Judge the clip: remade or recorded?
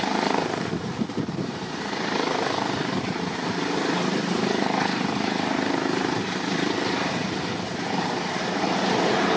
remade